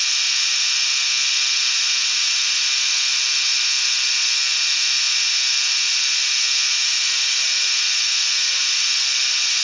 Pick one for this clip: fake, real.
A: real